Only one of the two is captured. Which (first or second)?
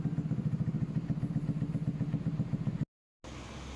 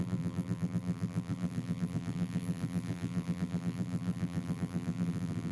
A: first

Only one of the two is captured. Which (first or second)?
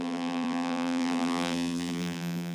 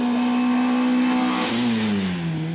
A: second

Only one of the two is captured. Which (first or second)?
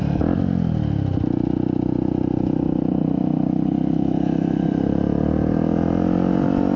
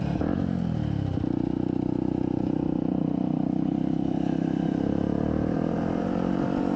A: first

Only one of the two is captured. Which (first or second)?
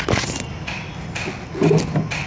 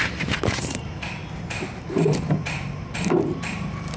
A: first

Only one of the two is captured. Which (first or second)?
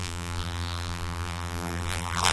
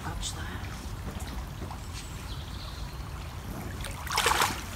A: second